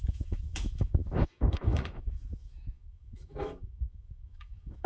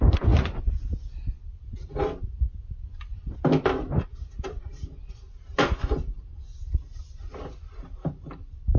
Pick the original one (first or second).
second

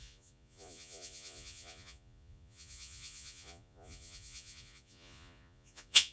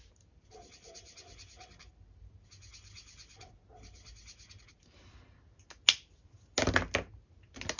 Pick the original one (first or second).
second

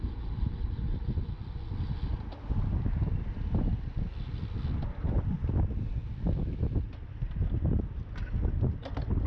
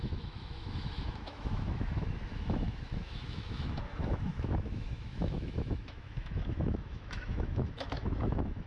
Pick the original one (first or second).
first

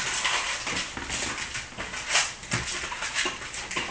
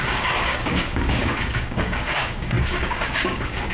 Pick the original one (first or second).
first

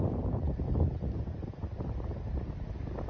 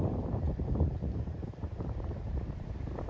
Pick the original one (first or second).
first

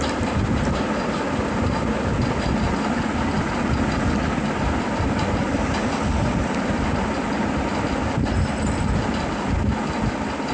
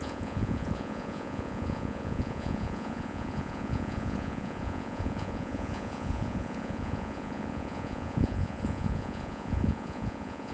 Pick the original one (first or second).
first